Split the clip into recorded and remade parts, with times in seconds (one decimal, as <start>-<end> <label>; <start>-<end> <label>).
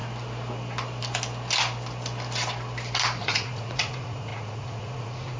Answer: 0.0-3.2 recorded; 3.2-5.4 remade